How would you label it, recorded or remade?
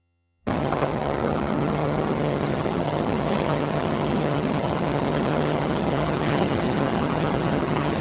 remade